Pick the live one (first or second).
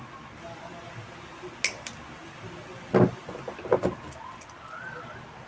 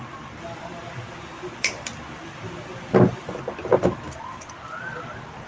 first